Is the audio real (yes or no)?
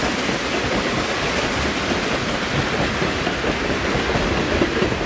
yes